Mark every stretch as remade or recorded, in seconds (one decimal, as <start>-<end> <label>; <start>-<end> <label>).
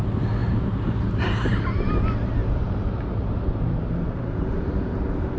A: 0.0-0.4 recorded; 0.4-2.0 remade; 2.0-2.4 recorded; 2.4-4.9 remade; 4.9-5.4 recorded